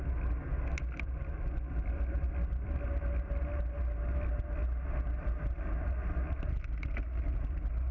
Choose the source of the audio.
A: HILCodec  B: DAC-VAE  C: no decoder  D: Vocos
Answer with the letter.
C